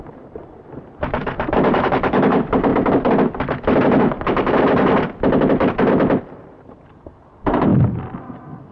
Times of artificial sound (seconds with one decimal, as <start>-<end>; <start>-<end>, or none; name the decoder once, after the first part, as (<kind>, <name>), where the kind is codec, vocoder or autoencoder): 0.0-2.7 (vocoder, BigVGAN v2); 6.2-7.7